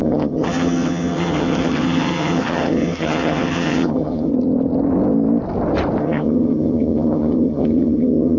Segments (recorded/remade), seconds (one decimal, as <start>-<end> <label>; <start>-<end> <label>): 0.0-4.3 remade; 4.3-6.0 recorded; 6.0-8.4 remade